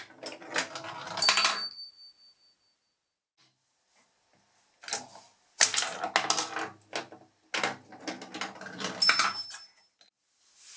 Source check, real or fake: real